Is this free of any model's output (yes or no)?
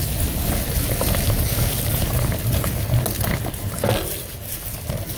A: yes